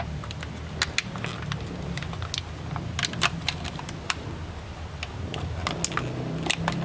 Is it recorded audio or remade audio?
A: recorded